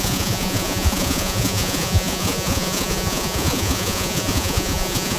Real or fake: fake